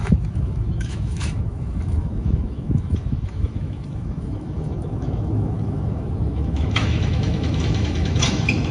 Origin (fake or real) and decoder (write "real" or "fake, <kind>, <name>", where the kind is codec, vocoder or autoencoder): fake, autoencoder, DAC-VAE